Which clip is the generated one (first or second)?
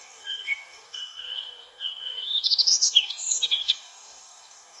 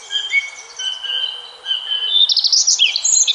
first